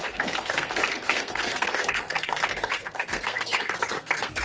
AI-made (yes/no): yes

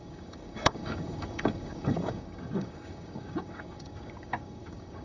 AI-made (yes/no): yes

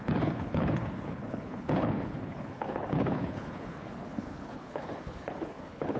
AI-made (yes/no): yes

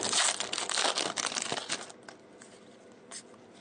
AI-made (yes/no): no